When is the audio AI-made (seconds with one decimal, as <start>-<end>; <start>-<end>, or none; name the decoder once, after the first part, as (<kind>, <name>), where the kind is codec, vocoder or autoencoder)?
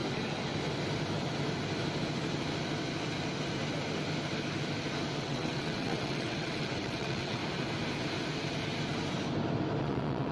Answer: 5.2-7.4 (vocoder, WaveNeXt); 9.8-10.3